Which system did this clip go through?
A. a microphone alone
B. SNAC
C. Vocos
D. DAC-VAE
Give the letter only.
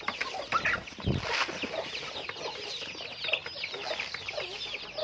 A